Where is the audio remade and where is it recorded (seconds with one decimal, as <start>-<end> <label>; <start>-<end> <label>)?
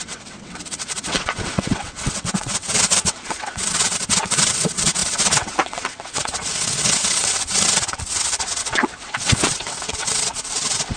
0.0-11.0 remade